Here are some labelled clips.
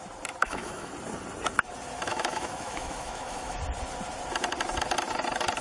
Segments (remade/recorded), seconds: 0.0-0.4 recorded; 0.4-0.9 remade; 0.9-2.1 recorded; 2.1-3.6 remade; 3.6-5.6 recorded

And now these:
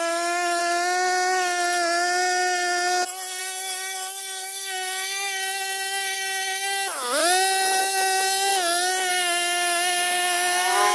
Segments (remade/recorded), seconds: 0.0-0.6 remade; 0.6-3.4 recorded; 3.4-7.2 remade; 7.2-7.8 recorded; 7.8-8.5 remade; 8.5-9.1 recorded; 9.1-10.9 remade

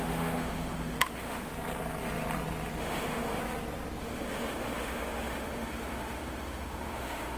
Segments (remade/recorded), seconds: 0.0-1.5 remade; 1.5-2.8 recorded; 2.8-3.4 remade; 3.4-4.0 recorded; 4.0-7.4 remade